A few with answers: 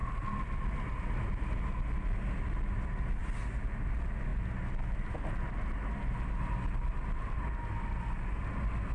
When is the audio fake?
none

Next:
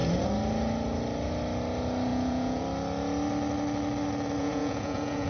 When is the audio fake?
2.1-2.6 (vocoder, Vocos); 4.4-5.3

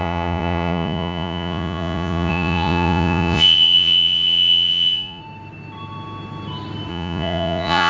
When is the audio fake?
0.0-5.2 (vocoder, Vocos); 6.9-7.9

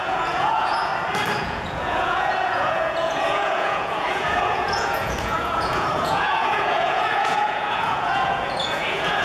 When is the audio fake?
0.0-0.9 (vocoder, Vocos); 1.4-9.2